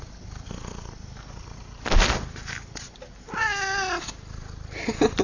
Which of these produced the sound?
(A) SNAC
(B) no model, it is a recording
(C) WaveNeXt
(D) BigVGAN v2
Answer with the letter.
B